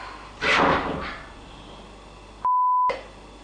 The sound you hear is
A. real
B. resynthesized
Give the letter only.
A